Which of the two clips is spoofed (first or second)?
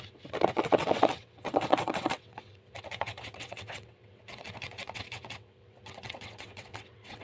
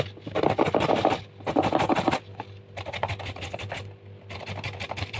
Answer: first